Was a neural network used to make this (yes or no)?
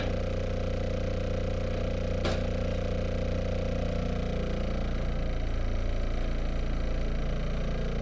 no